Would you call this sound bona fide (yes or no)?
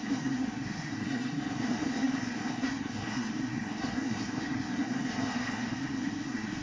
no